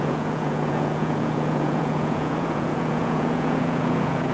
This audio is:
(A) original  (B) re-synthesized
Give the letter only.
B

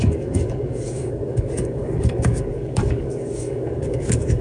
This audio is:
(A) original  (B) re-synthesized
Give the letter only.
B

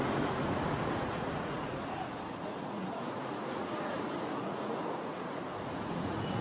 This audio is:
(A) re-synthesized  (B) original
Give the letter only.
A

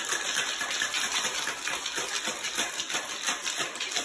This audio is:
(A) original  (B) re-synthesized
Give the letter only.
A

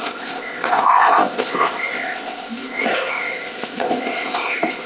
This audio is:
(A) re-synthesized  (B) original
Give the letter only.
A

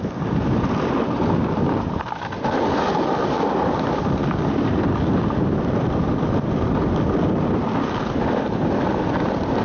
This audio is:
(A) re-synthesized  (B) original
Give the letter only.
B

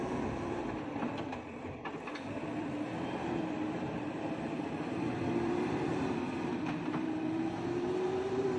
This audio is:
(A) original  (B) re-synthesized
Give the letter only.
B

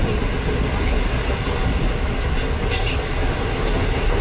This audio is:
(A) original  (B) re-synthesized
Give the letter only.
A